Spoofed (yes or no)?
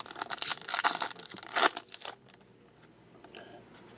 no